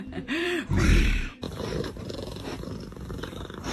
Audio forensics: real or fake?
fake